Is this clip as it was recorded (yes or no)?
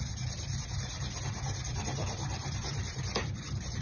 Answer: no